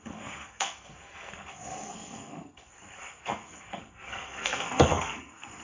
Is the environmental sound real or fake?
fake